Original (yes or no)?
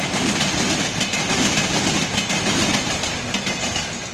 yes